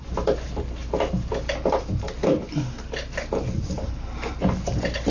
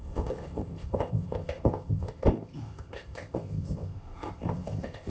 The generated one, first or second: second